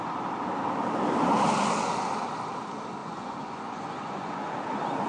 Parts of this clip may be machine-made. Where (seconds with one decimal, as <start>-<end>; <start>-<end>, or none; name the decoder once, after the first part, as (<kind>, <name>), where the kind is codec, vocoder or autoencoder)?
3.0-4.5 (vocoder, Vocos)